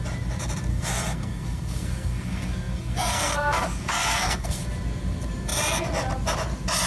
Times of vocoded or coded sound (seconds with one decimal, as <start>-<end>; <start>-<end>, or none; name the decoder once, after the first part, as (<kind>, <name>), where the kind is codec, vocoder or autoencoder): 0.7-4.6 (codec, SNAC)